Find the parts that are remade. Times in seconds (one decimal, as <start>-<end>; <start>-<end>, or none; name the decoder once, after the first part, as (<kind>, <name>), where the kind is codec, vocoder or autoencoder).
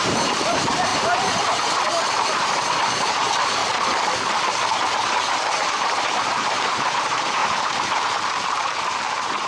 0.0-3.6 (vocoder, BigVGAN v2); 4.9-9.5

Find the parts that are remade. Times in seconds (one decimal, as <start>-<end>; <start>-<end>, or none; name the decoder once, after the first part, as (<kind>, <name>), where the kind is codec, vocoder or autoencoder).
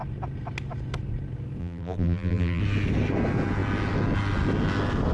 1.6-2.6 (vocoder, BigVGAN v2)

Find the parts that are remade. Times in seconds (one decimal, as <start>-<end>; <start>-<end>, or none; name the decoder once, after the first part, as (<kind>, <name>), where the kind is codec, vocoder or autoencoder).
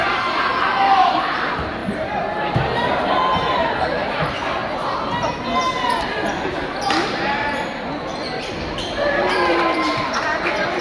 0.0-4.6 (vocoder, BigVGAN v2); 5.7-10.8